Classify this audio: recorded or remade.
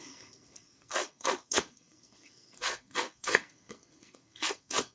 remade